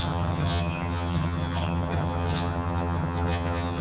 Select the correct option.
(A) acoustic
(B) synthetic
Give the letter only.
B